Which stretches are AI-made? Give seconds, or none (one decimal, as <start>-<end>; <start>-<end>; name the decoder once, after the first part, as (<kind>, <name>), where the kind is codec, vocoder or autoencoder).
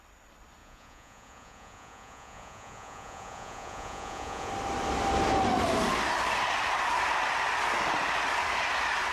0.6-4.5 (vocoder, Vocos)